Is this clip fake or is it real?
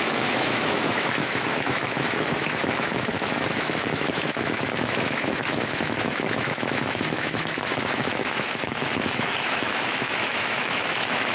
fake